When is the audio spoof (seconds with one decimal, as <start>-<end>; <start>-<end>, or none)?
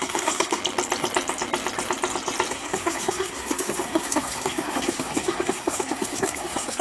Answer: 0.0-0.6; 2.5-6.8